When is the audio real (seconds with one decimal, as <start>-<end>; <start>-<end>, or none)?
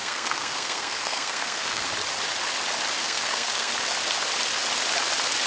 1.9-3.0; 3.7-5.5